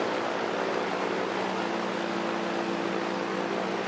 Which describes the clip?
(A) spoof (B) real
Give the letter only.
B